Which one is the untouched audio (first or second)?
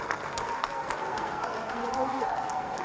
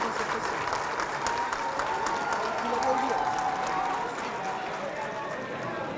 second